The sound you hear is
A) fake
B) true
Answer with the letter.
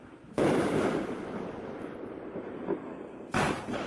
B